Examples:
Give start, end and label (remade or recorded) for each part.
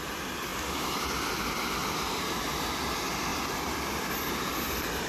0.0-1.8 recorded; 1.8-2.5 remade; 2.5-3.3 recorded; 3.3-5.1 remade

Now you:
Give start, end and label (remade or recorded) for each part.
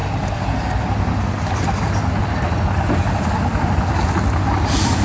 0.0-5.0 recorded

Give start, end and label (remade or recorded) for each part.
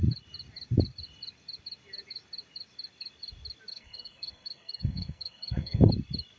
0.0-3.7 recorded; 3.7-5.9 remade; 5.9-6.4 recorded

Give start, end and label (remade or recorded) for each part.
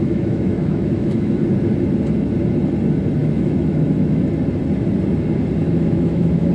0.0-1.4 remade; 1.4-3.2 recorded; 3.2-4.2 remade; 4.2-5.6 recorded; 5.6-6.5 remade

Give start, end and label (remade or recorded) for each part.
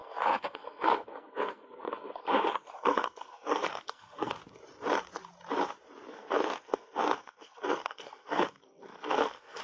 0.0-4.3 remade; 4.3-6.1 recorded; 6.1-9.6 remade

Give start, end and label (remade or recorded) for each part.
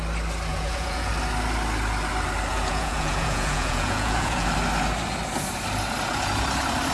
0.0-0.5 recorded; 0.5-1.1 remade; 1.1-2.5 recorded; 2.5-4.5 remade; 4.5-6.9 recorded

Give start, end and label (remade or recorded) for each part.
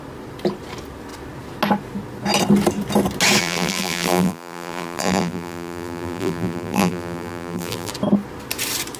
0.0-3.4 recorded; 3.4-7.9 remade; 7.9-9.0 recorded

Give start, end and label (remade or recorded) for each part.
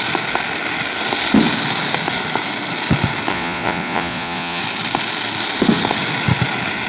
0.0-3.3 recorded; 3.3-4.6 remade; 4.6-6.9 recorded